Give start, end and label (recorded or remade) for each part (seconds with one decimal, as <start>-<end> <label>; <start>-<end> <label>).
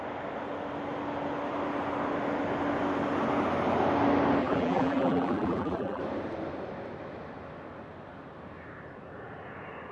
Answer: 0.0-4.4 recorded; 4.4-6.0 remade; 6.0-9.9 recorded